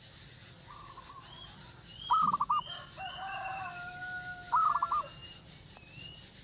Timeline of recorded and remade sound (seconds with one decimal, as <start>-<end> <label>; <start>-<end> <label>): 0.0-6.4 recorded